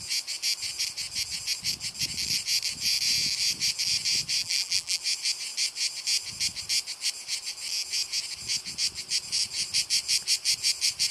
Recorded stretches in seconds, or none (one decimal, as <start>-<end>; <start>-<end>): 0.0-4.4; 5.0-11.1